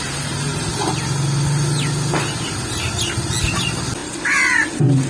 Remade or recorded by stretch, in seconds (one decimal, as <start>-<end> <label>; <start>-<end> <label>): 0.0-5.1 recorded